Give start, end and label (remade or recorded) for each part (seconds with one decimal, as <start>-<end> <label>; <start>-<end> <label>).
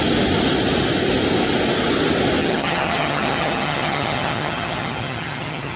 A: 0.0-2.4 recorded; 2.4-5.8 remade